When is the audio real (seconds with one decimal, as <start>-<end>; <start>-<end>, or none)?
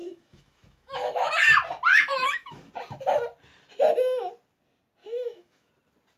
1.3-1.9; 2.7-5.0; 5.7-6.2